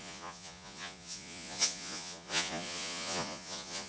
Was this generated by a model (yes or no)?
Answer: yes